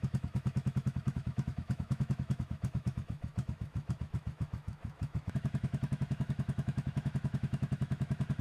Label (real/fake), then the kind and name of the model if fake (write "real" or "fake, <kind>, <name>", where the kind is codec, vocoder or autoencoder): fake, autoencoder, DAC-VAE